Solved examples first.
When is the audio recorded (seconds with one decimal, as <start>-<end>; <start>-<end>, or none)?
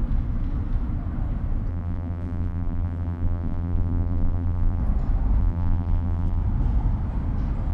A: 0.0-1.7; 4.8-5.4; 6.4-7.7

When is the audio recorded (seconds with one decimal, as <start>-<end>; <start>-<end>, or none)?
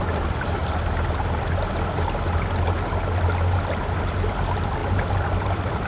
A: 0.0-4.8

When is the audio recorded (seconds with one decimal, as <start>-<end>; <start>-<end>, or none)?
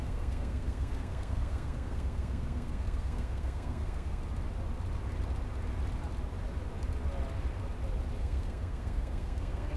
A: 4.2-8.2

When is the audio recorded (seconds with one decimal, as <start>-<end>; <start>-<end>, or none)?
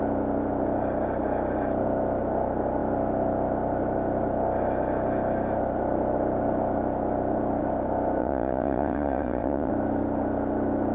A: 0.0-8.2; 9.7-10.9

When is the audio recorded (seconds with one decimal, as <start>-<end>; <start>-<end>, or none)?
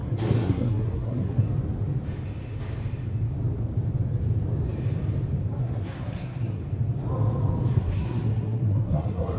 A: 1.4-5.6; 6.6-7.7